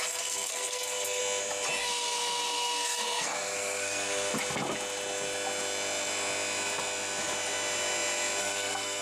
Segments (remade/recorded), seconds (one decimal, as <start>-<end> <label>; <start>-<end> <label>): 0.0-1.2 remade; 1.2-1.8 recorded; 1.8-4.3 remade; 4.3-8.4 recorded; 8.4-9.0 remade